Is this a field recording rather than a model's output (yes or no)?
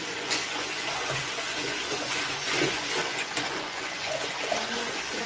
no